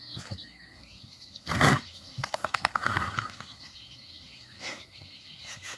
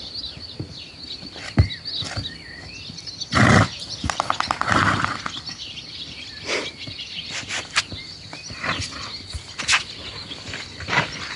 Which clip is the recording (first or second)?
second